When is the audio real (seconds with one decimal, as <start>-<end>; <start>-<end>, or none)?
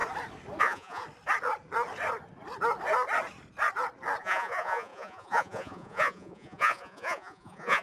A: 0.0-0.6; 1.0-4.2